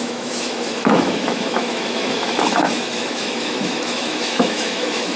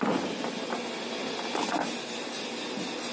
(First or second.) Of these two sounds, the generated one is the first